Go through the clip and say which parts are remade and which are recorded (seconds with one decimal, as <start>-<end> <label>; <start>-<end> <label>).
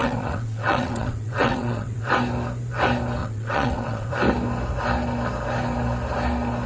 0.0-2.1 remade; 2.1-3.2 recorded; 3.2-4.1 remade; 4.1-6.7 recorded